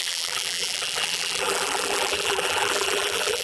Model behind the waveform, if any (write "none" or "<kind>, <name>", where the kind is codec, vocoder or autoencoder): vocoder, BigVGAN v2